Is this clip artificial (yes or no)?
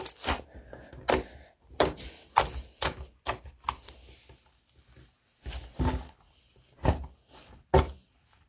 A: no